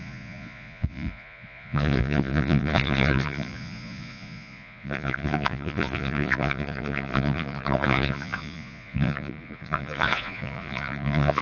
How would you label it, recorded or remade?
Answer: remade